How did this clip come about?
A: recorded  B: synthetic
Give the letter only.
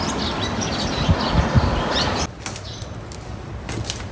A